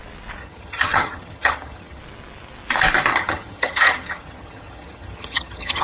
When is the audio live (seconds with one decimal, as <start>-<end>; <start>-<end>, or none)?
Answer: 0.0-0.4; 2.0-3.1